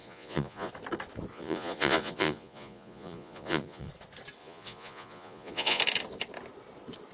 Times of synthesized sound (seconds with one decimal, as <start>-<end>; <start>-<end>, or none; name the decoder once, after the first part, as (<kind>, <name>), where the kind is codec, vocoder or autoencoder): 0.0-0.7 (vocoder, Vocos); 1.3-3.9; 4.4-5.8